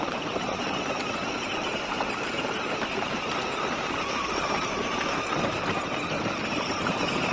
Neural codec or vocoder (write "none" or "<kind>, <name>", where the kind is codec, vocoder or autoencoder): vocoder, BigVGAN v2